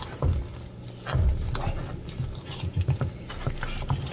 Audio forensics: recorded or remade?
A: recorded